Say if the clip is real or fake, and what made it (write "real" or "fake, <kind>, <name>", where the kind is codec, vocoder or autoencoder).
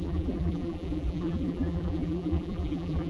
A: fake, vocoder, BigVGAN v2